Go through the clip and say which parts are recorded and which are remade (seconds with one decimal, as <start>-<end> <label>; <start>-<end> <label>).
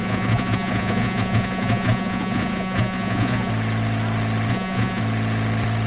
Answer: 0.0-3.5 remade; 3.5-4.5 recorded; 4.5-5.0 remade; 5.0-5.9 recorded